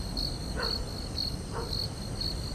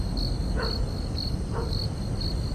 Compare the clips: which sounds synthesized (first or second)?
first